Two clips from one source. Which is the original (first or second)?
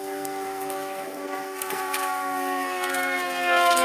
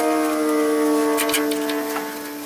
second